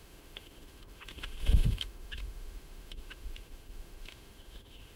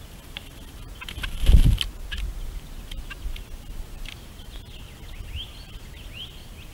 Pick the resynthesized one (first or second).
first